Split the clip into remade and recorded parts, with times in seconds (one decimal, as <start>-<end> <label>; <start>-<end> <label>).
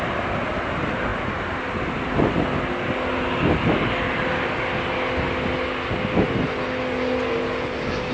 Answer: 0.0-8.1 recorded